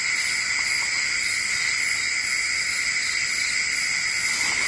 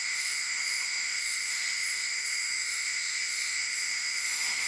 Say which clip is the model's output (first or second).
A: second